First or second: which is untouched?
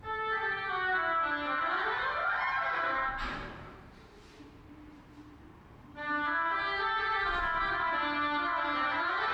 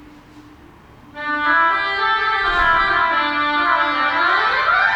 second